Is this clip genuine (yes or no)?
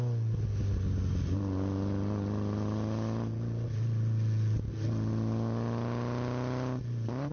yes